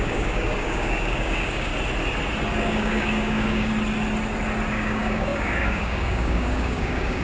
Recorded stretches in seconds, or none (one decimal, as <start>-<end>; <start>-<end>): 1.7-2.5; 3.7-4.7